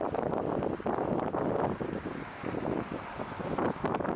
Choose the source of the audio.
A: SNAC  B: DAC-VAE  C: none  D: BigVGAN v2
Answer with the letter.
C